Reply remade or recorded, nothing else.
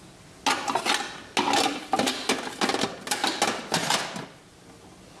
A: recorded